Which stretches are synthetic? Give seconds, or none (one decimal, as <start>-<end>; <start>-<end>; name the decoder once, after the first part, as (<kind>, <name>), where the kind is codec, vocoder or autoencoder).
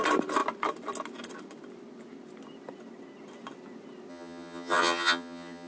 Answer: 4.1-5.7 (vocoder, HiFi-GAN)